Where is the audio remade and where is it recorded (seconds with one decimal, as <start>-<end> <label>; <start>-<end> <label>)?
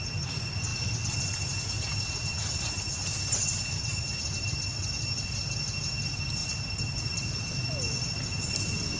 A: 0.0-9.0 recorded